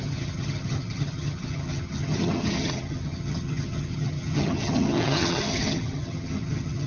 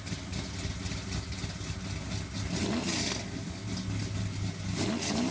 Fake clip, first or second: first